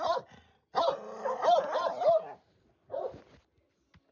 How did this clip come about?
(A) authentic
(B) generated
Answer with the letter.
A